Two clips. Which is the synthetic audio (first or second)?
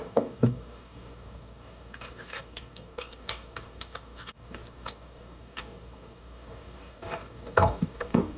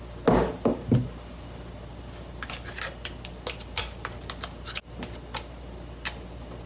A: first